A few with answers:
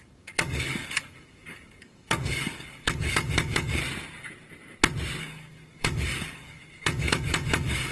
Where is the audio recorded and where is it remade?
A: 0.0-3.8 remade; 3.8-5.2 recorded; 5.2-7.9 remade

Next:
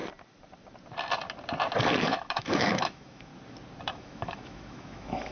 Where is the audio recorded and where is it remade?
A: 0.0-2.0 recorded; 2.0-3.3 remade; 3.3-3.9 recorded; 3.9-5.3 remade

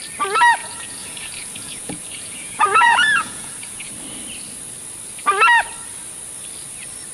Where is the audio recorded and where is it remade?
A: 0.0-0.6 recorded; 0.6-3.9 remade; 3.9-7.1 recorded

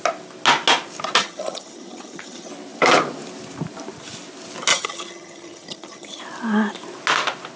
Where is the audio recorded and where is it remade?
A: 0.0-1.2 recorded; 1.2-2.5 remade; 2.5-4.7 recorded; 4.7-6.2 remade; 6.2-7.6 recorded

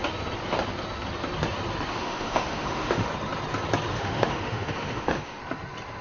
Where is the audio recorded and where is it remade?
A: 0.0-1.9 recorded; 1.9-3.1 remade; 3.1-3.9 recorded; 3.9-5.4 remade; 5.4-6.0 recorded

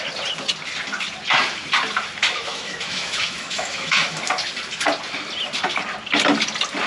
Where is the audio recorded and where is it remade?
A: 0.0-2.2 recorded; 2.2-4.2 remade; 4.2-6.9 recorded

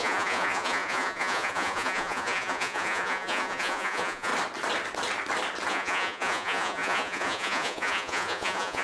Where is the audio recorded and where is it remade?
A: 0.0-4.3 remade; 4.3-5.7 recorded; 5.7-8.8 remade

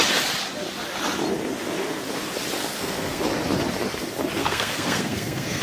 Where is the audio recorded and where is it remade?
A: 0.0-2.6 recorded; 2.6-3.2 remade; 3.2-4.4 recorded; 4.4-5.6 remade